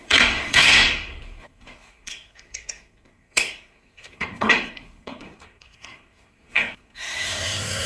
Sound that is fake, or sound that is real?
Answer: fake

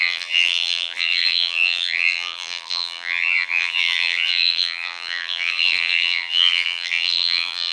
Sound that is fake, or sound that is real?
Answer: fake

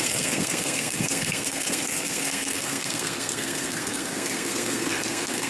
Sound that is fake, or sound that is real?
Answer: fake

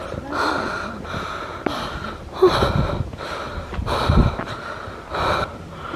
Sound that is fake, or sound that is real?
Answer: real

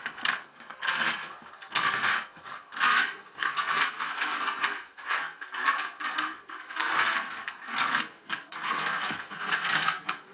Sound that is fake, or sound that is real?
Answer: fake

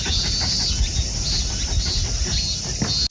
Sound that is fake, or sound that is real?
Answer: real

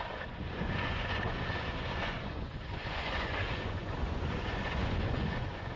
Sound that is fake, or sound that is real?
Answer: fake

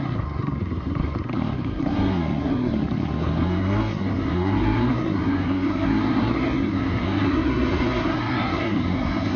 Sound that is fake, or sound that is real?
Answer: fake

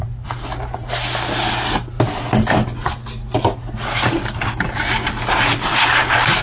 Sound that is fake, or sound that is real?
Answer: real